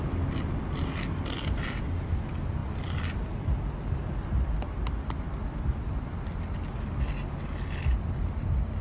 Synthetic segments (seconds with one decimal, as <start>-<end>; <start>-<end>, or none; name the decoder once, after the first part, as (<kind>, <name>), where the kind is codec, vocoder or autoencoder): none

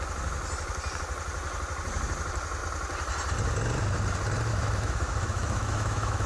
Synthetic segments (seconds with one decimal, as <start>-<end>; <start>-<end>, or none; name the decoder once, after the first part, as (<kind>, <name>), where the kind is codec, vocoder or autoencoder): 4.5-6.3 (autoencoder, DAC-VAE)